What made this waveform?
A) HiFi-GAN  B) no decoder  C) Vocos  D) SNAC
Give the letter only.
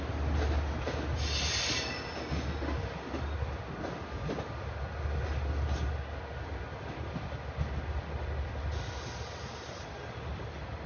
B